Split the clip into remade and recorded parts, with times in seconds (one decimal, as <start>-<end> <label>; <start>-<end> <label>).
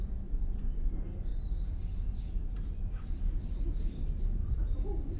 0.0-1.3 remade; 1.3-4.4 recorded; 4.4-5.2 remade